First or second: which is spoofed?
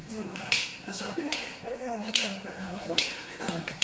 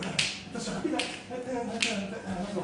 first